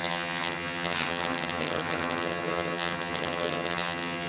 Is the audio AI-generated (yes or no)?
yes